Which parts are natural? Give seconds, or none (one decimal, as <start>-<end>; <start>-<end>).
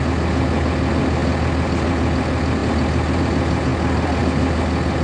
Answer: 0.0-5.0